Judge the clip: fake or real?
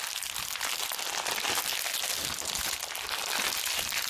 real